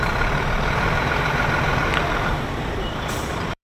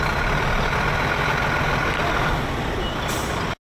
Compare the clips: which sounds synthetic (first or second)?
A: first